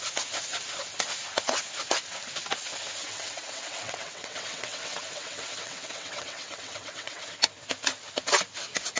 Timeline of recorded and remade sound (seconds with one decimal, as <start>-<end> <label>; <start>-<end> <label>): 0.0-3.0 recorded; 3.0-7.2 remade; 7.2-9.0 recorded